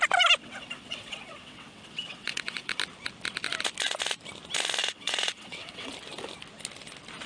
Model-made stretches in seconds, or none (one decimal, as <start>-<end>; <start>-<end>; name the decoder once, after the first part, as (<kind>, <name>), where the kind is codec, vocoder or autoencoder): 0.4-2.8 (vocoder, WaveNeXt); 4.8-5.9